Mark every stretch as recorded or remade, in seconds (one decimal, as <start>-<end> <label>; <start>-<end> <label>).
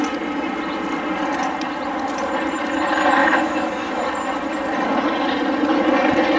0.0-3.2 recorded; 3.2-4.0 remade; 4.0-6.4 recorded